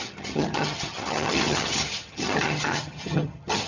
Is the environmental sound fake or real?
fake